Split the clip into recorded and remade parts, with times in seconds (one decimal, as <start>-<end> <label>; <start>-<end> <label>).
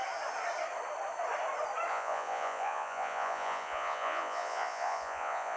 0.0-1.9 recorded; 1.9-5.6 remade